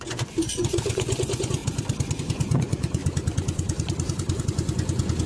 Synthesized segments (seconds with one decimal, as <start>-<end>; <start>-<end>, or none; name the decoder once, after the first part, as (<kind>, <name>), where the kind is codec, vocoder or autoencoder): 0.0-1.6 (vocoder, Vocos); 2.2-3.0; 4.4-5.3